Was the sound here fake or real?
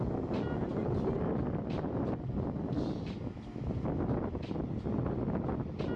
real